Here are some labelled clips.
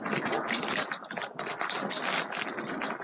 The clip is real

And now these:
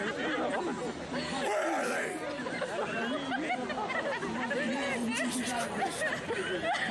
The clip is real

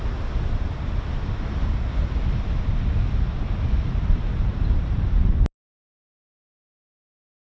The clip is real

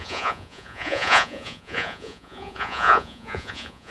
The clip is fake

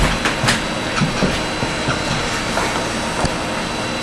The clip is real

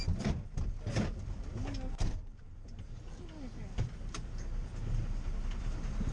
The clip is real